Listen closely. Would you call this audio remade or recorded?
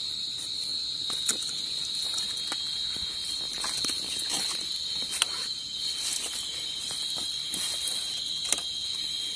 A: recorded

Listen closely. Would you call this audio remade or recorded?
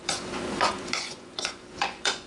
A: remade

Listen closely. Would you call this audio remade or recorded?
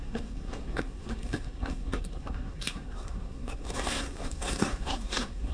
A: remade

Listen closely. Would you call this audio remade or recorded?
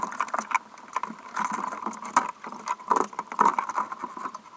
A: recorded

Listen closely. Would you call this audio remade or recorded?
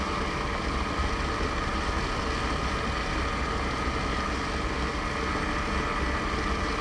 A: recorded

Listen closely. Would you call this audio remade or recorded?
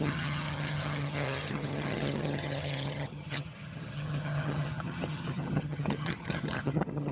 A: remade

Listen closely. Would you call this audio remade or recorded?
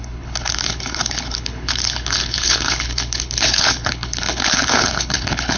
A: remade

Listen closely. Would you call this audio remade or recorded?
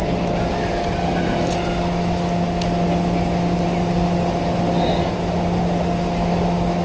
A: recorded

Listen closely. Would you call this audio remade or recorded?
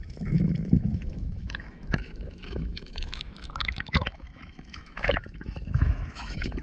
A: remade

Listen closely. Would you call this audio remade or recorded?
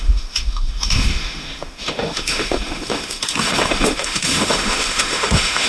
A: remade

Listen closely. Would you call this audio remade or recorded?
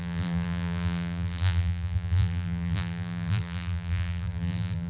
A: remade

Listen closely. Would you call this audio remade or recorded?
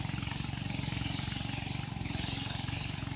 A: recorded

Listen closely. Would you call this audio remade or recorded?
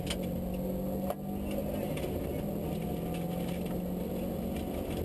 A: recorded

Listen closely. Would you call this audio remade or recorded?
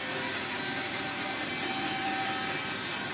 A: recorded